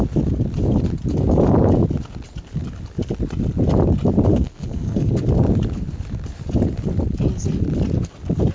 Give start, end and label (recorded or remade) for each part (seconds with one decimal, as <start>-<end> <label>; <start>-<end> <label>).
0.0-4.3 recorded; 4.3-5.1 remade; 5.1-8.5 recorded